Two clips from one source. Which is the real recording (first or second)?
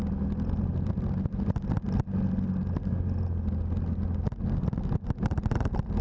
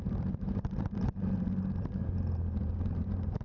first